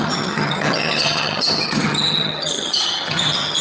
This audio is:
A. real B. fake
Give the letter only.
B